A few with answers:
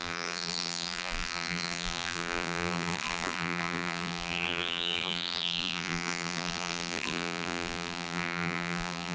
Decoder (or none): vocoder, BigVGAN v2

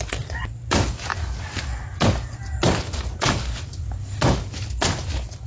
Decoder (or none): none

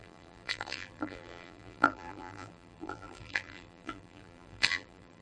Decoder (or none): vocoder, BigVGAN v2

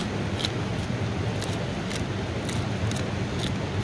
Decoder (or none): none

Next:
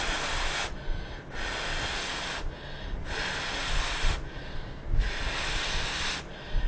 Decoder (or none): none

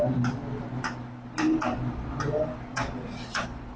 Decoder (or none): none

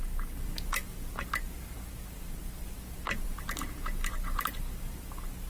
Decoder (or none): vocoder, BigVGAN v2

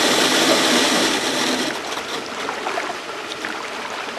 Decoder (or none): vocoder, BigVGAN v2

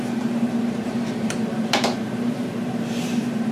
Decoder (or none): vocoder, BigVGAN v2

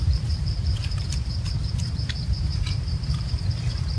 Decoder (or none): vocoder, BigVGAN v2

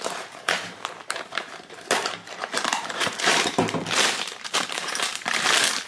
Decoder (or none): vocoder, BigVGAN v2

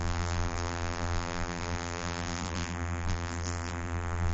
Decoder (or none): vocoder, BigVGAN v2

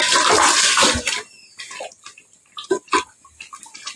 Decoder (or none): vocoder, BigVGAN v2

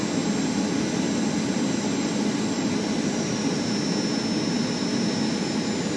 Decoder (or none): none